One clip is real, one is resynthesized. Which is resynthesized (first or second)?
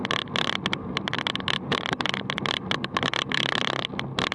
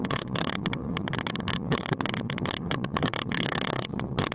second